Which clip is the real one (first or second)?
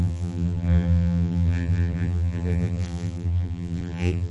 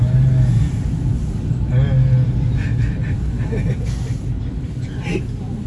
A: second